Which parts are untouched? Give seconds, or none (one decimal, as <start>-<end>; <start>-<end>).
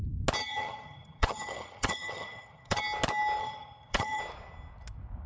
0.0-0.4; 2.8-3.4; 4.2-5.3